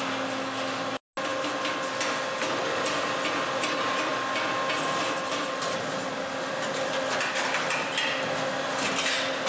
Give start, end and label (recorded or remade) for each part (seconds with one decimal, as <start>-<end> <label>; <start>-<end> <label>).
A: 0.0-9.5 recorded